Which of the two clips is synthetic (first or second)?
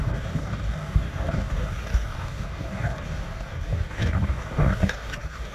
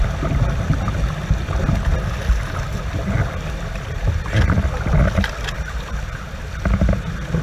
first